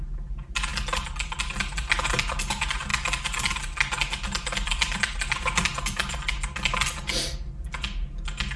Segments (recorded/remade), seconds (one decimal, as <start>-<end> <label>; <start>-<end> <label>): 0.0-8.6 recorded